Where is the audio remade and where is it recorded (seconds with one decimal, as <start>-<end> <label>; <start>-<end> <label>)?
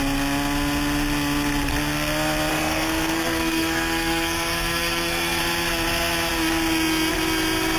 0.0-2.5 recorded; 2.5-5.4 remade; 5.4-7.8 recorded